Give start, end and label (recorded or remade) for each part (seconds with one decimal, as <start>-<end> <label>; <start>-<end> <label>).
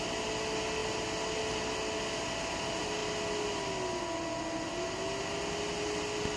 0.0-6.4 recorded